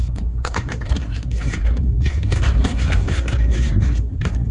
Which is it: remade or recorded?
remade